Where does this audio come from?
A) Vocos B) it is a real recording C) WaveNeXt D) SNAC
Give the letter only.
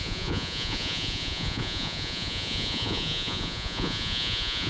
A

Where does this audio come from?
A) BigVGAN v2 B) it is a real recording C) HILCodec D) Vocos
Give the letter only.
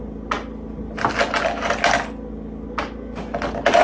B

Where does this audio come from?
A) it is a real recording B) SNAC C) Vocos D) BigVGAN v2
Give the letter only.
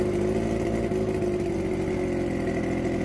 A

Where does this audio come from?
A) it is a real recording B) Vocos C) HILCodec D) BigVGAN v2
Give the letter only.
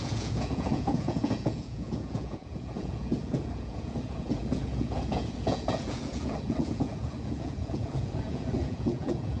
B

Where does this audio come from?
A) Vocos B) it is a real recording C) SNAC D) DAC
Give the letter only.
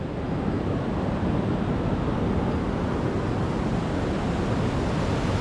B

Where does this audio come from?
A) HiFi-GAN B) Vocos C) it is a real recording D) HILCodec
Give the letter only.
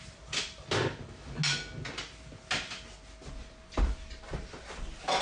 C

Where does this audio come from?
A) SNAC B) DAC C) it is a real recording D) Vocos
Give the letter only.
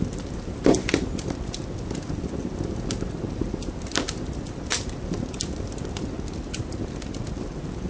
C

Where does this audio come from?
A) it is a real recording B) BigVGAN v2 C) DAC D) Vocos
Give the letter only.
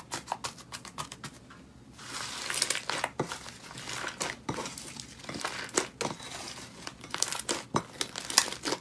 A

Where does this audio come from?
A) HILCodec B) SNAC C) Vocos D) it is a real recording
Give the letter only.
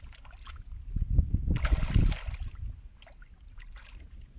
D